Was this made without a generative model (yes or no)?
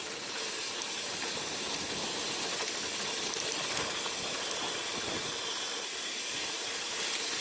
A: yes